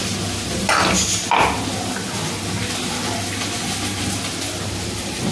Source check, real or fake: real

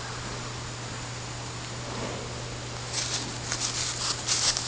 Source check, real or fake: real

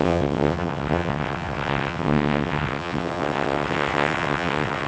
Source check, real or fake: fake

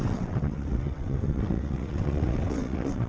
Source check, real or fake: fake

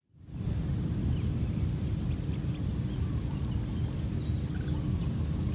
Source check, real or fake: real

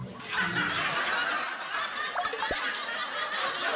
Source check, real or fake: real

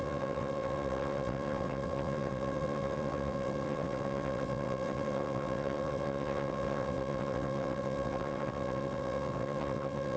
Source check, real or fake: fake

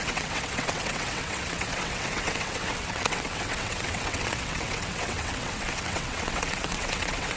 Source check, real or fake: fake